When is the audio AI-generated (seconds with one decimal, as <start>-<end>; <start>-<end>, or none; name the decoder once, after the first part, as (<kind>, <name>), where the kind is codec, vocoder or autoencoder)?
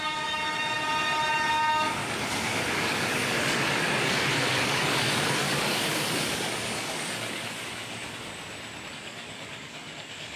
0.0-0.4 (codec, DAC); 1.5-8.3; 8.9-10.4